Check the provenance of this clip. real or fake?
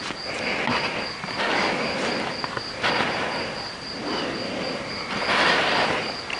real